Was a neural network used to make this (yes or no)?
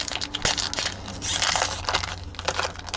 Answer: no